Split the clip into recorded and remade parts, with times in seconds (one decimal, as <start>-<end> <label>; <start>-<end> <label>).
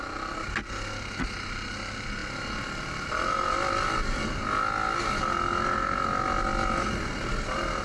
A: 0.0-7.8 recorded